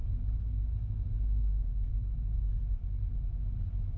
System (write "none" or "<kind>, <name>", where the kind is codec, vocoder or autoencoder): none